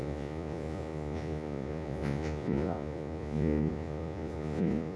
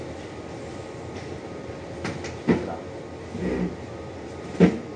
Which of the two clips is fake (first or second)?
first